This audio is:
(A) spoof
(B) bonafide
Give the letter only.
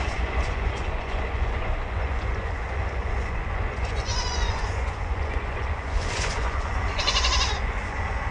A